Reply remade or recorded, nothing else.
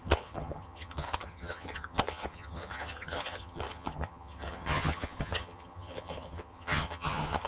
remade